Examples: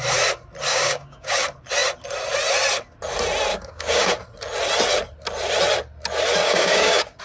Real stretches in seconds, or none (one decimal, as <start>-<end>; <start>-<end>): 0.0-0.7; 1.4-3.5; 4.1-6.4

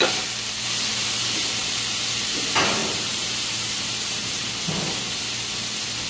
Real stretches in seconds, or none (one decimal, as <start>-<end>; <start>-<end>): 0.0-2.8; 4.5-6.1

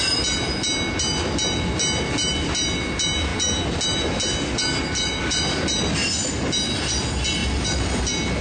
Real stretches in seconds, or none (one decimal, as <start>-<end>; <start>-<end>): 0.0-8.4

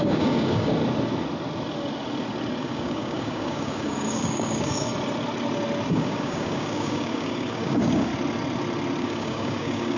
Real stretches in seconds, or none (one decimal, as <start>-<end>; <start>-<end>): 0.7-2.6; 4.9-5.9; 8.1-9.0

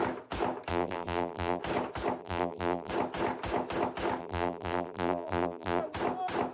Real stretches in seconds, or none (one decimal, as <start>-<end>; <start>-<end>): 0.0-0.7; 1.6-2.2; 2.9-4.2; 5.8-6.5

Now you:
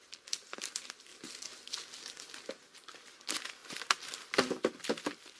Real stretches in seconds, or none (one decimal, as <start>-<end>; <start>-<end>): 0.0-5.4

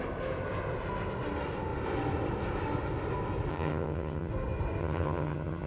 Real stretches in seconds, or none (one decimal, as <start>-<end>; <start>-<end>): 0.0-3.5; 4.3-4.8